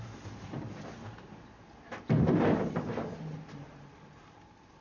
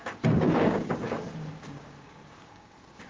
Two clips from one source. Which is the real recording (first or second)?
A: first